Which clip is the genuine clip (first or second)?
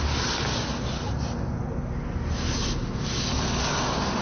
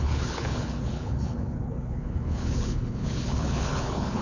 first